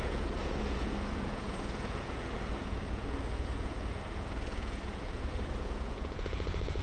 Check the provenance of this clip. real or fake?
fake